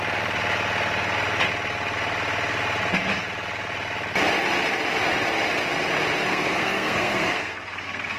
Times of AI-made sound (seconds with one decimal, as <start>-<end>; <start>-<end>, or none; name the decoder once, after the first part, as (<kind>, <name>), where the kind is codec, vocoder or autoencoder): 6.3-8.2 (codec, SNAC)